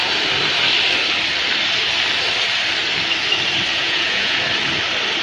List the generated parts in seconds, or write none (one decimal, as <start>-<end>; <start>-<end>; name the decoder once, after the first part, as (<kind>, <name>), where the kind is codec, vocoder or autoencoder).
3.7-4.4 (vocoder, Vocos)

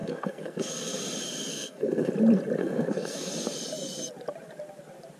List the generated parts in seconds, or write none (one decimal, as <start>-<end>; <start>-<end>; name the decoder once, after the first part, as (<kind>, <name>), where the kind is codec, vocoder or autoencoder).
0.0-1.0 (codec, SNAC); 1.5-2.1; 2.6-3.3